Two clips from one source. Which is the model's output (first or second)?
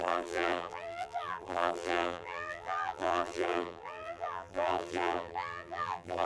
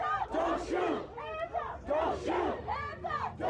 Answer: first